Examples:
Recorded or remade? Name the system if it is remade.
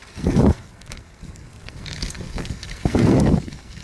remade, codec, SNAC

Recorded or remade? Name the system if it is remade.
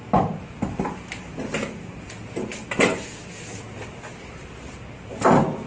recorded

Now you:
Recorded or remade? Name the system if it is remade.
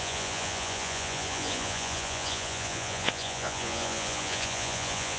remade, vocoder, Vocos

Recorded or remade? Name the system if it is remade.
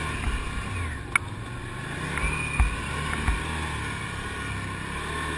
recorded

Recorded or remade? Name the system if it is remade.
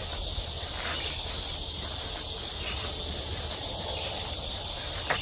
recorded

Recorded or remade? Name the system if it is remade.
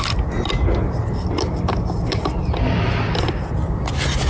recorded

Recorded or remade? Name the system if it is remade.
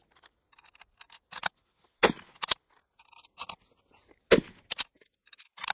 recorded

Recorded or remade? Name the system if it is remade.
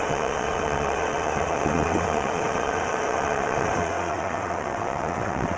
remade, vocoder, WaveNeXt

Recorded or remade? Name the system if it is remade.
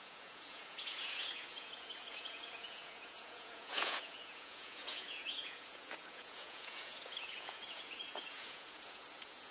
remade, vocoder, Vocos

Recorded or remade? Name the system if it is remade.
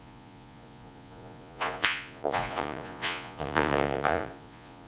remade, vocoder, Vocos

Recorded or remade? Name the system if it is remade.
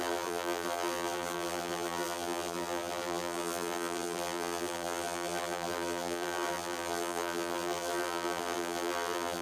remade, vocoder, BigVGAN v2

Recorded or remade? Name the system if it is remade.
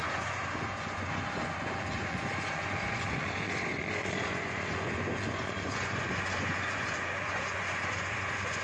remade, vocoder, Vocos